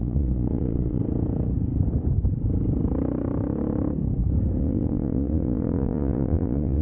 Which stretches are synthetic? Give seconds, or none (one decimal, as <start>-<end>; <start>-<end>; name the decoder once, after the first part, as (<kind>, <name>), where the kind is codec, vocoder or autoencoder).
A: 0.0-1.0 (vocoder, Vocos); 4.6-6.8